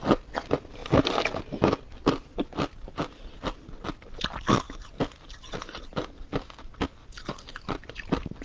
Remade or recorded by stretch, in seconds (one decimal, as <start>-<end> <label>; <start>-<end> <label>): 0.0-0.8 recorded; 0.8-1.4 remade; 1.4-2.3 recorded; 2.3-6.1 remade; 6.1-8.4 recorded